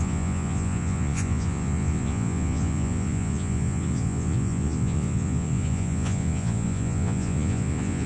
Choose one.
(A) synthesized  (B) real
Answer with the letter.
A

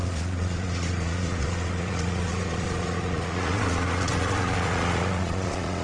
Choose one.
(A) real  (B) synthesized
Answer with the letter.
B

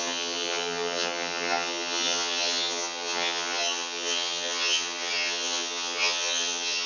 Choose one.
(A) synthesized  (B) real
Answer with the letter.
A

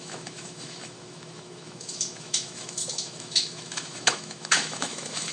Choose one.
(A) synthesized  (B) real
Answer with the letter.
A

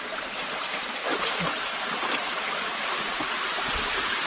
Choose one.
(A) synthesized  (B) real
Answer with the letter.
B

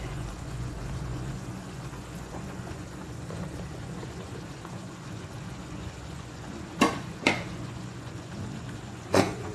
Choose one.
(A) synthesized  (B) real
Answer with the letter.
A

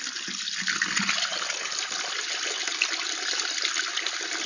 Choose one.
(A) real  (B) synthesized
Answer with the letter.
A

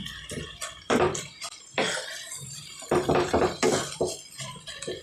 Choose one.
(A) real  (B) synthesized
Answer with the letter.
B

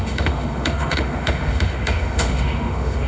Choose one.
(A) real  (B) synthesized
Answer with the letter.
B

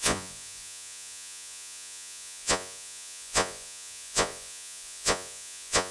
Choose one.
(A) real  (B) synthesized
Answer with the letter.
B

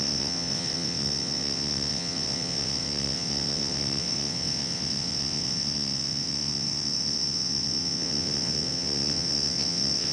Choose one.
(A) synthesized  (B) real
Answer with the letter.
A